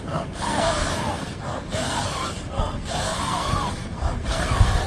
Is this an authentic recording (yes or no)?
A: no